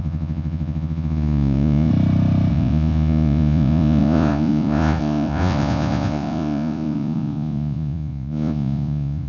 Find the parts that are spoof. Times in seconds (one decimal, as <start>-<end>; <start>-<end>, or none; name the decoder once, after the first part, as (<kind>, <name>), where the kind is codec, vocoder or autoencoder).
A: 0.0-1.9 (vocoder, Vocos); 2.5-9.3